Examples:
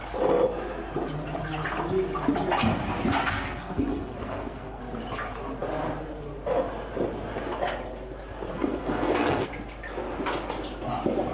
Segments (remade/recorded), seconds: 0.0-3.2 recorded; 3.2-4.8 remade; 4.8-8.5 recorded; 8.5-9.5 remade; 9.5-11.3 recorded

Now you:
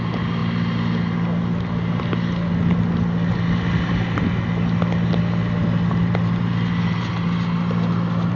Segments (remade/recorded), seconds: 0.0-8.3 recorded

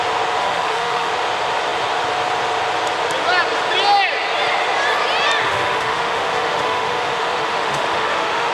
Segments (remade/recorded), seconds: 0.0-0.4 recorded; 0.4-1.1 remade; 1.1-5.4 recorded; 5.4-8.5 remade

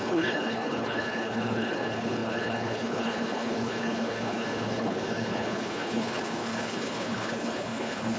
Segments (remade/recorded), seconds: 0.0-8.2 remade

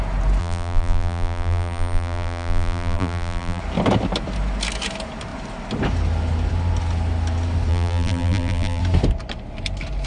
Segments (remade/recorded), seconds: 0.0-0.4 recorded; 0.4-3.6 remade; 3.6-7.7 recorded; 7.7-8.8 remade; 8.8-10.1 recorded

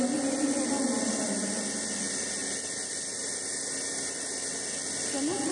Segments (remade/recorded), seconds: 0.0-5.5 recorded

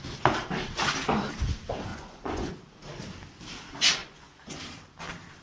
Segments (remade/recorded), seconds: 0.0-1.9 recorded; 1.9-2.5 remade; 2.5-4.0 recorded; 4.0-4.6 remade; 4.6-5.4 recorded

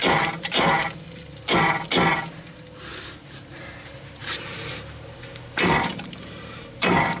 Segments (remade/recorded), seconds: 0.0-0.7 remade; 0.7-2.9 recorded; 2.9-3.5 remade; 3.5-4.2 recorded; 4.2-7.2 remade